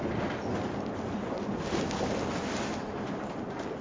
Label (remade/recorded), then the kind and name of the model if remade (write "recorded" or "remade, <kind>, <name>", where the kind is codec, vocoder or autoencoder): recorded